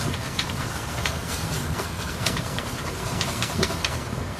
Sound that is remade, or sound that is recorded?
remade